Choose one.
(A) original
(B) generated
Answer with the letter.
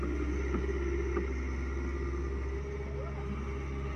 A